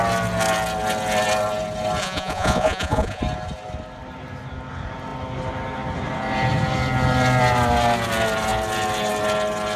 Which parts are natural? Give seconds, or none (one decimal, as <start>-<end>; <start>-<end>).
0.0-2.0; 3.2-9.8